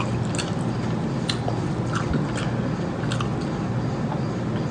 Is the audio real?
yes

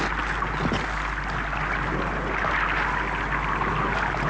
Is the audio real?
yes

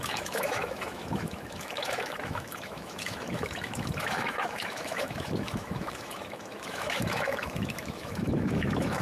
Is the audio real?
no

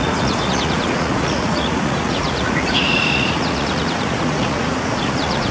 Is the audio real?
no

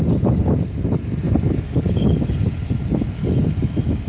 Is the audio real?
yes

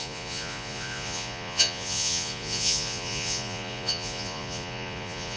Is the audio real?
no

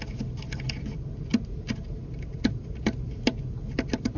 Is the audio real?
yes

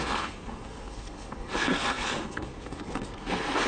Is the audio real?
no